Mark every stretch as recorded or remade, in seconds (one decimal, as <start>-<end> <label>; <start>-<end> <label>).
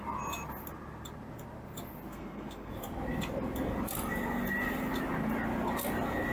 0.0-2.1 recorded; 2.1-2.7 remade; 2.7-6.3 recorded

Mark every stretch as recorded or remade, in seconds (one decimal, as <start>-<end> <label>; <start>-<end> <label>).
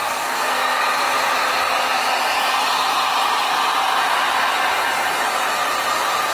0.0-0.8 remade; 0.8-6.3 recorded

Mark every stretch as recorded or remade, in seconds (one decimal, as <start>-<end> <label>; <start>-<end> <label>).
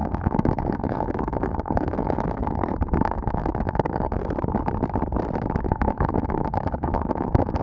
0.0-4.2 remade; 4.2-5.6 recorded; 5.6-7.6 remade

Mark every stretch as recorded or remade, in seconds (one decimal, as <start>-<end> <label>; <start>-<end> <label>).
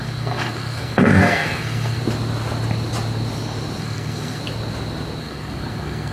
0.0-2.0 remade; 2.0-3.8 recorded; 3.8-4.4 remade; 4.4-5.2 recorded; 5.2-6.1 remade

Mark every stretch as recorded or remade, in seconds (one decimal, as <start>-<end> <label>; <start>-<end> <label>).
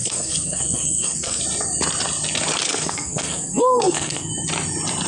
0.0-1.4 remade; 1.4-2.7 recorded; 2.7-4.3 remade; 4.3-5.1 recorded